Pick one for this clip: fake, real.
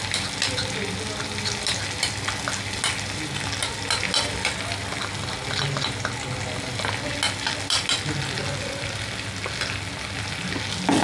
real